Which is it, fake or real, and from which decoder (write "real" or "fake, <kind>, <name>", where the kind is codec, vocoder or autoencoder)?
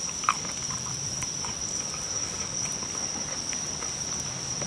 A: real